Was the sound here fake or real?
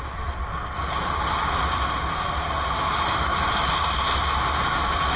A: real